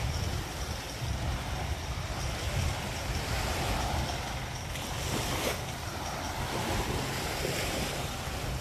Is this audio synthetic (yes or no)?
no